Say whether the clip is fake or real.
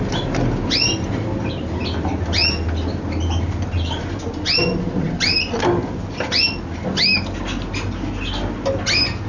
real